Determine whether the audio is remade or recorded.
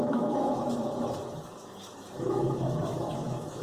remade